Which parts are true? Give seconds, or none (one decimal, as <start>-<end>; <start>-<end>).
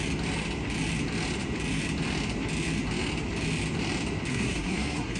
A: 0.0-4.3